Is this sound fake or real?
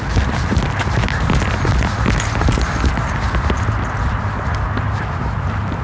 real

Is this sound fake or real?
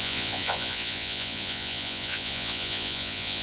fake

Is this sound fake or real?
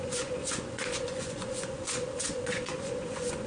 fake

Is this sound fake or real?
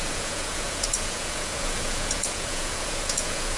fake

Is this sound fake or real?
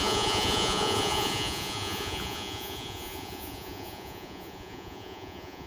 fake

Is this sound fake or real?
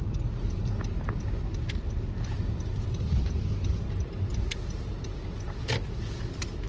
real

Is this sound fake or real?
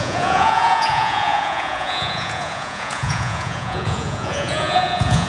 fake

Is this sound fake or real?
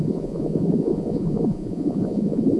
fake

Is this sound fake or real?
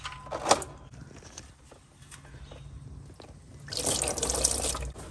real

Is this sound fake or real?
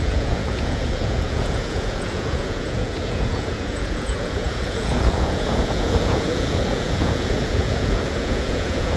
fake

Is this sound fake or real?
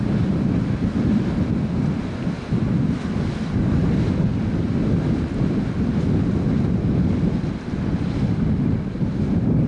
real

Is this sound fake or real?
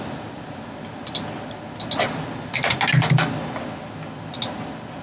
real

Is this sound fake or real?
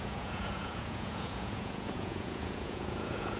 fake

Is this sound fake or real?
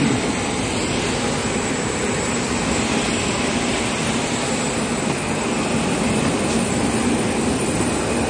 real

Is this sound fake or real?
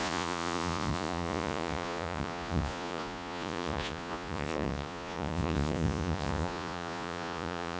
fake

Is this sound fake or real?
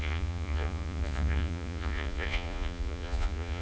fake